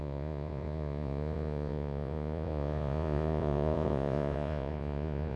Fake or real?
fake